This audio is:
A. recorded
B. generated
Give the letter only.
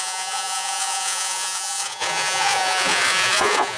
B